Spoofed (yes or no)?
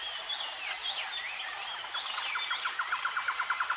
no